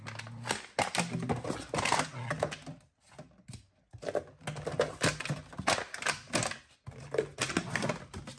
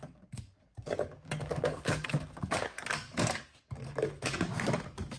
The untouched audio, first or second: first